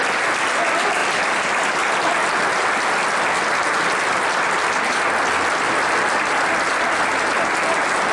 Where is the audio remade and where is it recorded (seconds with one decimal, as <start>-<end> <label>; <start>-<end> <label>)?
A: 0.0-8.1 recorded